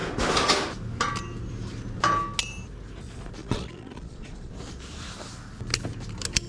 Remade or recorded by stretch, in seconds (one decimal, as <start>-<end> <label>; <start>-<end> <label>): 0.0-3.4 recorded; 3.4-4.5 remade; 4.5-6.5 recorded